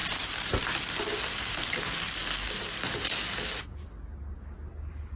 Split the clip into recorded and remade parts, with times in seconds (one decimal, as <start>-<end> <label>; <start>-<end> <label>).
0.0-5.2 recorded